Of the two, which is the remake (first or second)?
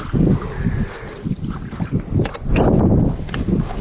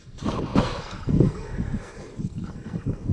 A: second